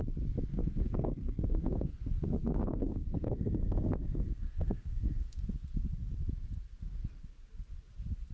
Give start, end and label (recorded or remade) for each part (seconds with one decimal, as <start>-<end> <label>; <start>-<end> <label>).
0.0-0.5 recorded; 0.5-5.4 remade; 5.4-8.3 recorded